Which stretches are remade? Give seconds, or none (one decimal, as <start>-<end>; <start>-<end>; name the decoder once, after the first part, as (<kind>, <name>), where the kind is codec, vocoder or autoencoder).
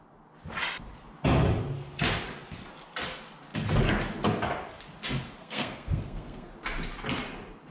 5.4-6.5 (codec, SNAC)